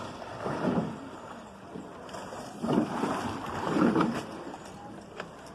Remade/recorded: recorded